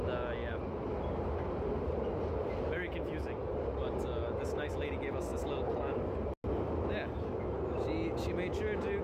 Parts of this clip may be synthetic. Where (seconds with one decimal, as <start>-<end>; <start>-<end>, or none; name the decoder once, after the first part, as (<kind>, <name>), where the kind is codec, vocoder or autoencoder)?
none